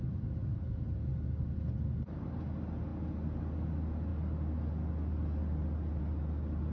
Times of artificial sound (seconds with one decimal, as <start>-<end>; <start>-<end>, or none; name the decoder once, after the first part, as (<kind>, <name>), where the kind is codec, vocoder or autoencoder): 0.4-1.1 (vocoder, Vocos)